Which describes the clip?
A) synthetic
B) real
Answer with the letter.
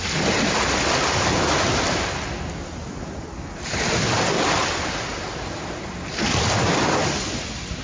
B